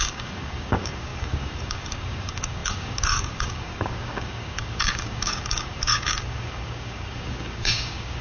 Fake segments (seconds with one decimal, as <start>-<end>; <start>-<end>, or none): 0.0-8.2